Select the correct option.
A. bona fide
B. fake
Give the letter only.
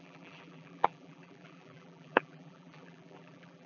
B